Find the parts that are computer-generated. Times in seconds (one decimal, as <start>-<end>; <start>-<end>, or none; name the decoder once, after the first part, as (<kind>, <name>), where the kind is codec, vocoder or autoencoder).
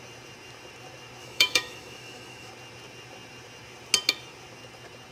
1.2-2.5 (autoencoder, DAC-VAE)